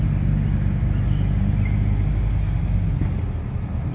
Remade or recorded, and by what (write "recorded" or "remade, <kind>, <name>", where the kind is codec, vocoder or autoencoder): recorded